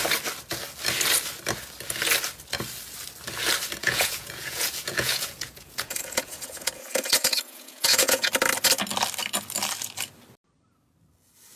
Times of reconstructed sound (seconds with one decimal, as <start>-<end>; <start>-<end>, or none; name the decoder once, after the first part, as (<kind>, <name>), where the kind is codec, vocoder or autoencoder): 3.8-8.3 (vocoder, Vocos)